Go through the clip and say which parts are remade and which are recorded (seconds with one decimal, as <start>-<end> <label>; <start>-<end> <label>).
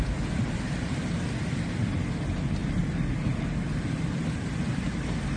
0.0-2.6 recorded; 2.6-4.0 remade; 4.0-5.4 recorded